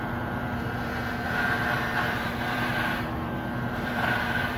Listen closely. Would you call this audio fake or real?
fake